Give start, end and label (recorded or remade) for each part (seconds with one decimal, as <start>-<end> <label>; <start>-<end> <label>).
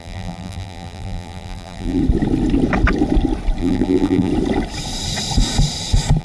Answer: 0.0-2.0 remade; 2.0-3.6 recorded; 3.6-4.3 remade; 4.3-6.2 recorded